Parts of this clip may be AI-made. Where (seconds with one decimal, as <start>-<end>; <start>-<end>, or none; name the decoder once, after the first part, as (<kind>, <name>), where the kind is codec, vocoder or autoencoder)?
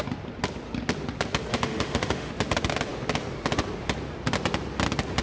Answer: 1.5-2.3 (autoencoder, DAC-VAE)